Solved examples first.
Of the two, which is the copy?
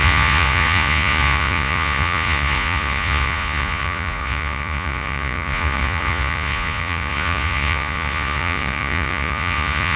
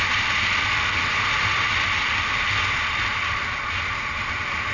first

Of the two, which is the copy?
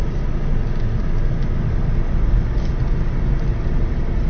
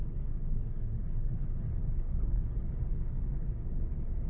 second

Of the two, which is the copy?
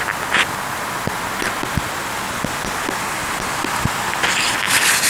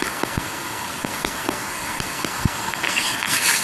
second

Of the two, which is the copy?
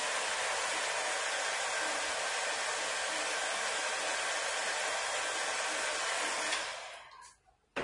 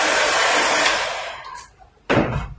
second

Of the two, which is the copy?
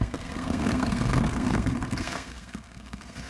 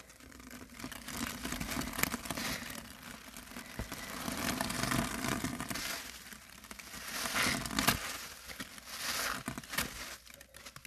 first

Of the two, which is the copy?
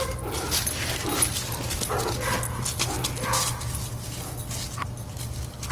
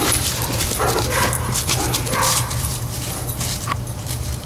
second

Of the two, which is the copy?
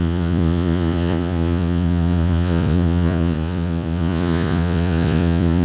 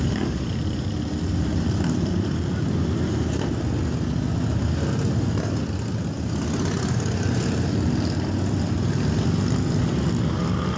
first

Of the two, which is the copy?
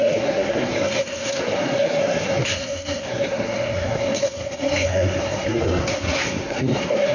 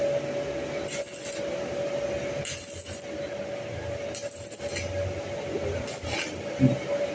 first